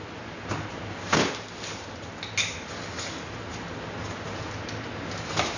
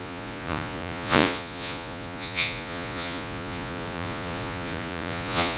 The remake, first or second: second